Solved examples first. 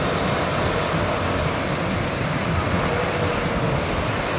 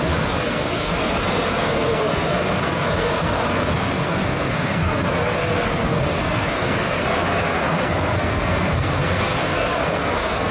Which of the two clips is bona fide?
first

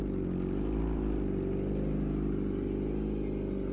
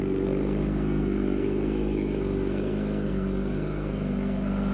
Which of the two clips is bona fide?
first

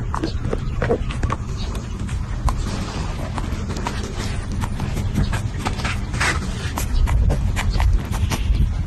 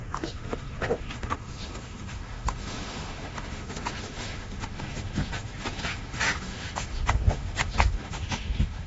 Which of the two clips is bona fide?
first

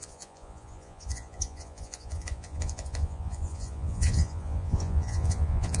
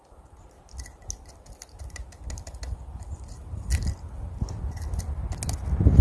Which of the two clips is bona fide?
second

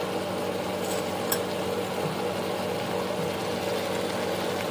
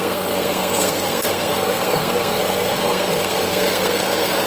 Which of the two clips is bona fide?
first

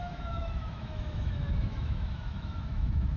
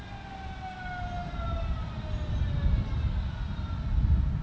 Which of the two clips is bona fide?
second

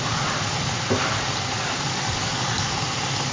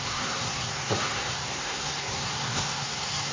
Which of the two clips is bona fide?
first